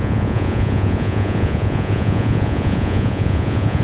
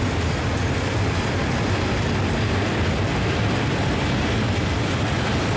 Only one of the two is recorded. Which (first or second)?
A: second